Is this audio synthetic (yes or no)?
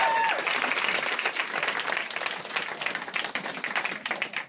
no